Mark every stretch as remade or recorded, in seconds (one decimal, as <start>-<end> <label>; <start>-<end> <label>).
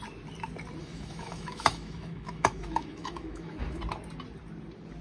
0.0-0.8 recorded; 0.8-3.8 remade; 3.8-5.0 recorded